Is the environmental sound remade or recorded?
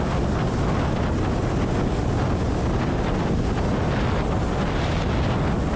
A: recorded